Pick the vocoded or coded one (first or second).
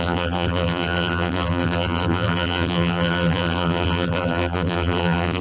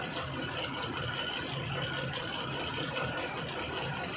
first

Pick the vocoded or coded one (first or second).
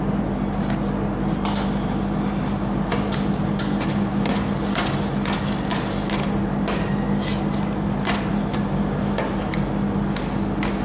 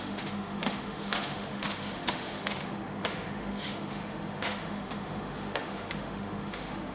second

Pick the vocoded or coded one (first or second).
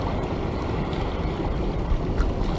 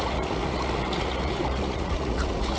second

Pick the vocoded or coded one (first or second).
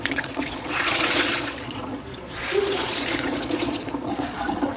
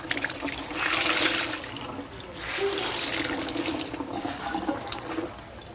first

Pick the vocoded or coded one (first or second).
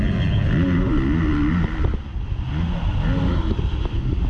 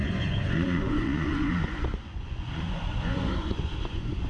second